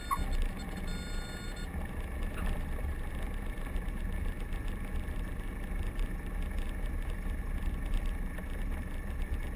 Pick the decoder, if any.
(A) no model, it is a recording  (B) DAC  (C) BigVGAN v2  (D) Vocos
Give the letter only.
A